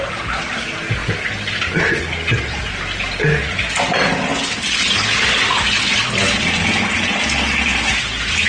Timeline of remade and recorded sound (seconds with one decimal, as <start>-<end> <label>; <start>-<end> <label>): 0.0-8.5 recorded